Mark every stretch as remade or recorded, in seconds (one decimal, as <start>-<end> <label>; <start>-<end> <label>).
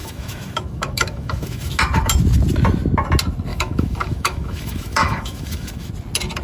0.0-1.7 remade; 1.7-3.5 recorded; 3.5-5.9 remade; 5.9-6.4 recorded